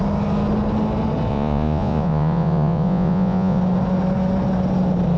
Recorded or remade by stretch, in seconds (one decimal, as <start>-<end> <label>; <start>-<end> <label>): 0.0-1.3 recorded; 1.3-3.6 remade; 3.6-5.2 recorded